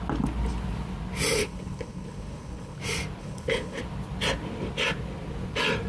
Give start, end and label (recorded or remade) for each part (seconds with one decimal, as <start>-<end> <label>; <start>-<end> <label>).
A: 0.0-1.4 recorded; 1.4-2.8 remade; 2.8-3.2 recorded; 3.2-3.8 remade; 3.8-5.9 recorded